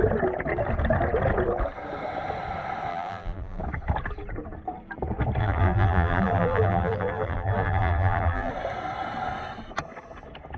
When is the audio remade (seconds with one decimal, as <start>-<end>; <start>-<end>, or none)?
2.9-3.6; 5.4-8.5